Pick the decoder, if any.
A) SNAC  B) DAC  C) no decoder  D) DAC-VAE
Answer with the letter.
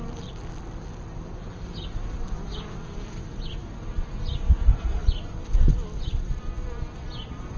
C